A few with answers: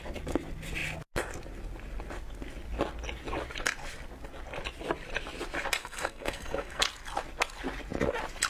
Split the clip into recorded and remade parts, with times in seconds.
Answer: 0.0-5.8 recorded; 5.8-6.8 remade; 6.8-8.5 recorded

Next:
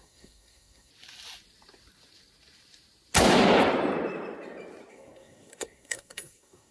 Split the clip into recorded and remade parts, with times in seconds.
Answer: 0.0-0.9 remade; 0.9-4.9 recorded; 4.9-6.7 remade

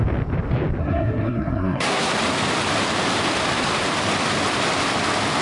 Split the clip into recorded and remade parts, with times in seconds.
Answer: 0.0-0.8 recorded; 0.8-2.1 remade; 2.1-5.4 recorded

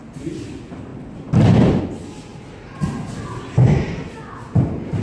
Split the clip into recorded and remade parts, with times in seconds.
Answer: 0.0-5.0 recorded

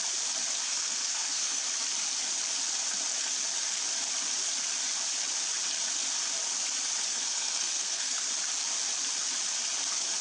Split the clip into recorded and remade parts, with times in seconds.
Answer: 0.0-0.6 recorded; 0.6-1.6 remade; 1.6-7.1 recorded; 7.1-8.2 remade; 8.2-10.2 recorded